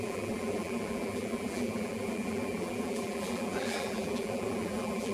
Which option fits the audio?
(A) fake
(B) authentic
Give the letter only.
A